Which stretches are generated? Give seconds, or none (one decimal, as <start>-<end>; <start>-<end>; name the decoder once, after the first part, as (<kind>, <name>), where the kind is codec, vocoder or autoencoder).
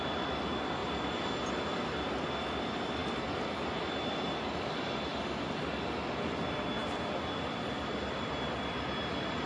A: none